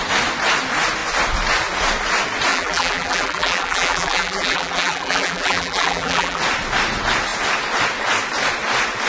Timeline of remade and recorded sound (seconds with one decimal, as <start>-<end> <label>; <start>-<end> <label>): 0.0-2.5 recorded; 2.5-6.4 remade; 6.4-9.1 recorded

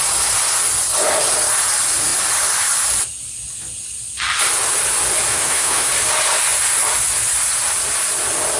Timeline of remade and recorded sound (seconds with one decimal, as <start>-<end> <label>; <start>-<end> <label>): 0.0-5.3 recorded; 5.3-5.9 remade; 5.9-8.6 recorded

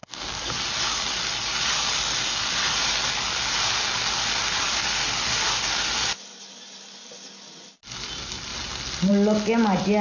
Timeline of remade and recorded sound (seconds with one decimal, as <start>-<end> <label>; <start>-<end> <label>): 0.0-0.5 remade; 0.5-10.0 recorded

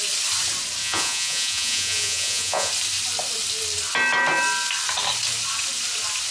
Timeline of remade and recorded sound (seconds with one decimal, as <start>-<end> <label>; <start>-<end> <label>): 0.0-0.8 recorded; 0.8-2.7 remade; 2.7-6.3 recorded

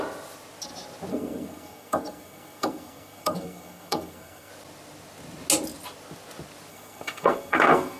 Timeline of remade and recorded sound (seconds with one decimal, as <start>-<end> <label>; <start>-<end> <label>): 0.0-1.1 recorded; 1.1-4.5 remade; 4.5-6.7 recorded; 6.7-8.0 remade

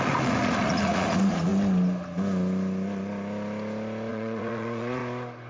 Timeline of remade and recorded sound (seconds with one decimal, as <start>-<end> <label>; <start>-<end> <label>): 0.0-1.5 remade; 1.5-4.1 recorded; 4.1-5.0 remade; 5.0-5.5 recorded